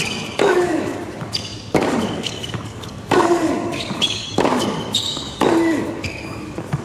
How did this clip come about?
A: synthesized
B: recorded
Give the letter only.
A